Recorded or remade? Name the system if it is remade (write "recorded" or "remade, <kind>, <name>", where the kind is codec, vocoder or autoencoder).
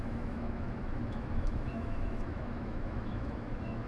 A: remade, autoencoder, DAC-VAE